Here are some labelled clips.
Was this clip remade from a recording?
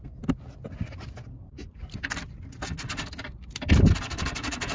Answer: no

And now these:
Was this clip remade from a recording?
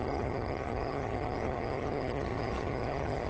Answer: yes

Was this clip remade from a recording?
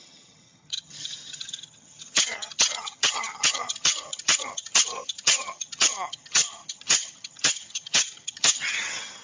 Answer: yes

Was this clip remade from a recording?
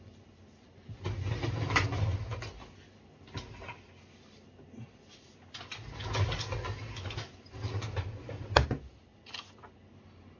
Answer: no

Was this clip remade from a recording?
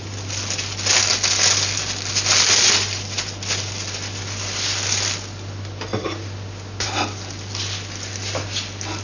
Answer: no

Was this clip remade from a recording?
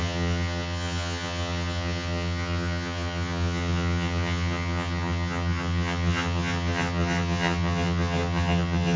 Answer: yes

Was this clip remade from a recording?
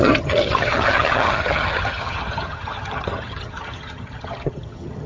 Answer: yes